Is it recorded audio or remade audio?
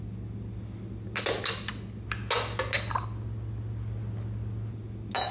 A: recorded